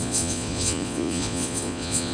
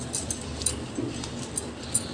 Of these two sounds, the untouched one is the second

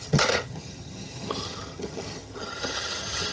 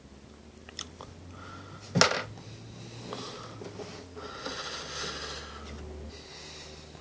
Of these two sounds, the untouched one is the second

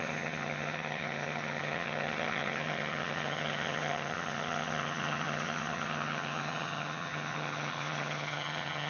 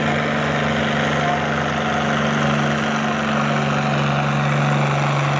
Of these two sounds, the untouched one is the second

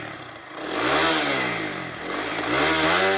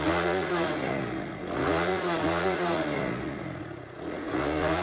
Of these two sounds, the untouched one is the first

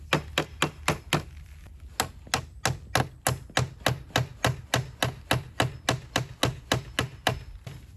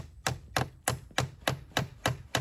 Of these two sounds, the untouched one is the first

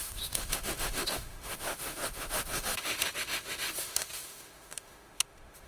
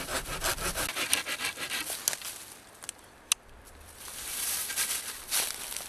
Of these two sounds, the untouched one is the second